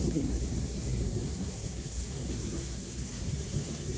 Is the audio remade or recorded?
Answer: remade